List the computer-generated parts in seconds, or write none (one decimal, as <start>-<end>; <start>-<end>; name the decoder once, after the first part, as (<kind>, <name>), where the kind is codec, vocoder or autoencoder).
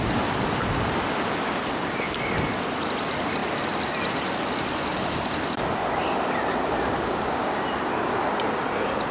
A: 0.0-3.4 (vocoder, BigVGAN v2); 5.7-9.1